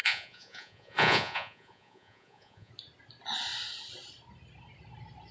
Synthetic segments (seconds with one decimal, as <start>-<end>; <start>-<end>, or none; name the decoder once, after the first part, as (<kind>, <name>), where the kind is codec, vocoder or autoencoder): 0.0-2.7 (vocoder, Vocos)